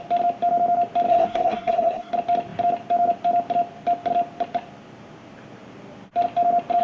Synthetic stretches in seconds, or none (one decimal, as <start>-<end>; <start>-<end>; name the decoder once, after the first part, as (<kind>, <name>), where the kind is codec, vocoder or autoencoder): 1.1-2.1 (codec, SNAC)